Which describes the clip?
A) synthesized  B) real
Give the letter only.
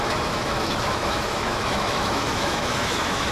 A